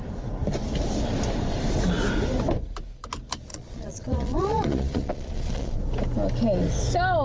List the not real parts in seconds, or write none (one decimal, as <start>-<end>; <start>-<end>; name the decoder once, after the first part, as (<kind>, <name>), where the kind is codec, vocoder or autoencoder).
3.5-5.8 (vocoder, Vocos)